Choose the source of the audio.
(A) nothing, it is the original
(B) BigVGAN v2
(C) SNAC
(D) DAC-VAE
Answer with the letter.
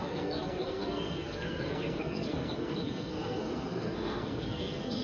C